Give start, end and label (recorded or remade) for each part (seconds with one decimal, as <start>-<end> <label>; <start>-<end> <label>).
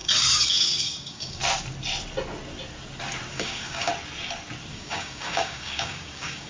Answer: 0.0-1.4 remade; 1.4-3.3 recorded; 3.3-3.9 remade; 3.9-4.7 recorded; 4.7-6.5 remade